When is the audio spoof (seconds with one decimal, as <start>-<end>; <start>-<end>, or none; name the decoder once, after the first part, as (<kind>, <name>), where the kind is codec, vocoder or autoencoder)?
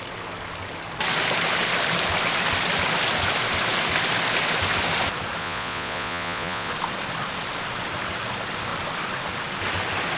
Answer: 5.4-6.7 (vocoder, Vocos)